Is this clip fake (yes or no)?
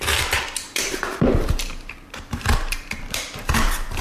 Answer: yes